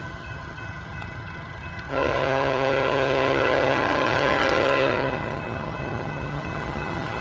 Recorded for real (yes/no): no